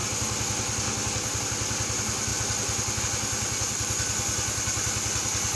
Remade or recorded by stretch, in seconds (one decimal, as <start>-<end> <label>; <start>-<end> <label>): 0.0-5.6 recorded